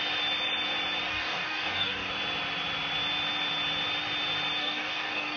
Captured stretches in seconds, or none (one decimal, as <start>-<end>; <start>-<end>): 0.0-1.1; 2.1-4.6